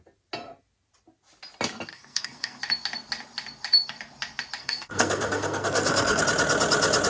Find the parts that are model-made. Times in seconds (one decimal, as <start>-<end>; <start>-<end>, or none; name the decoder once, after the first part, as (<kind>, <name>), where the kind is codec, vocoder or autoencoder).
1.9-2.6 (codec, SNAC); 4.6-6.2